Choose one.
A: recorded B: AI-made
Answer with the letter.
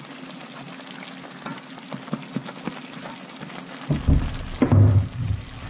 A